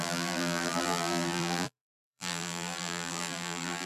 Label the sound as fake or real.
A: fake